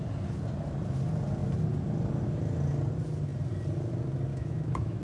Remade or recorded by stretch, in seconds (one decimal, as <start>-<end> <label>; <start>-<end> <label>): 0.0-4.3 recorded; 4.3-5.0 remade